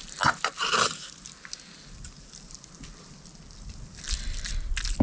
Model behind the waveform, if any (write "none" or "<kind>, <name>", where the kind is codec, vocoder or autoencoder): none